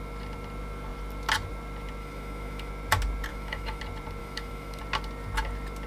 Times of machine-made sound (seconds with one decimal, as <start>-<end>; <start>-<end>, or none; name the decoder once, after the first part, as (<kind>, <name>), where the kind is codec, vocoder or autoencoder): 2.0-2.7 (autoencoder, DAC-VAE); 3.3-3.8; 4.2-4.8